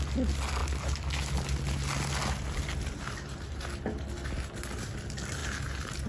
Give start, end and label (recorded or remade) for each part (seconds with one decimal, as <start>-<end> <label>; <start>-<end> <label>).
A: 0.0-6.1 recorded